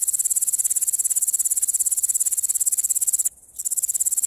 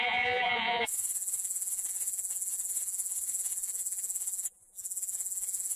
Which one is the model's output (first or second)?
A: second